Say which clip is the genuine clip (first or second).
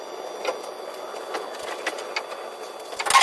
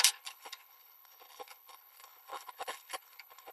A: first